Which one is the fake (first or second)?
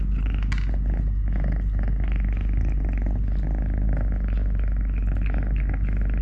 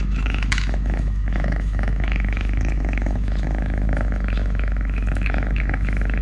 second